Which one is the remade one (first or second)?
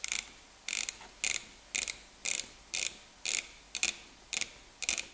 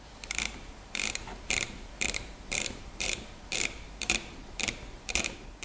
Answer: second